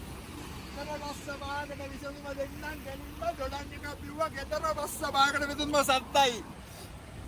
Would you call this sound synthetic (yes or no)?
no